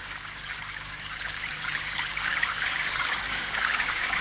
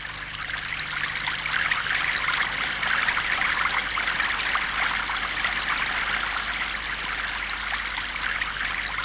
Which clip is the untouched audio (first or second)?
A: second